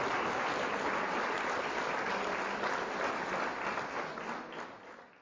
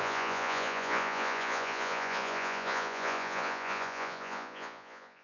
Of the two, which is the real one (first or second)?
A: first